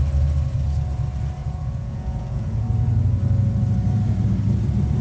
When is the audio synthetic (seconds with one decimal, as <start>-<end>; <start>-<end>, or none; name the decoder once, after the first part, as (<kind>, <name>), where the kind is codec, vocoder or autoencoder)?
1.4-2.6 (vocoder, Vocos)